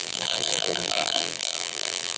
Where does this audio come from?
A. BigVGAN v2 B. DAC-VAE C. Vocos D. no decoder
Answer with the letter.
A